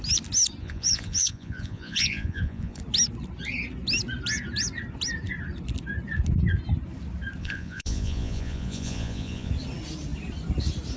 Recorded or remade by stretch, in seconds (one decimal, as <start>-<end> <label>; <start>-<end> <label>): 0.0-0.6 recorded; 0.6-2.8 remade; 2.8-7.4 recorded; 7.4-9.5 remade; 9.5-11.0 recorded